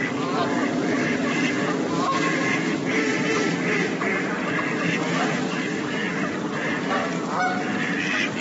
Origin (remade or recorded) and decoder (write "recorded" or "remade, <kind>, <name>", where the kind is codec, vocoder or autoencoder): recorded